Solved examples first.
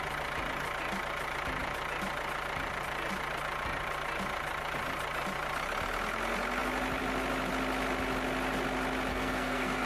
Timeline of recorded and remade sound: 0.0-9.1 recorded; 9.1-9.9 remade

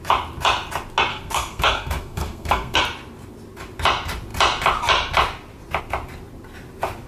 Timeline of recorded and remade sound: 0.0-1.1 recorded; 1.1-2.8 remade; 2.8-7.1 recorded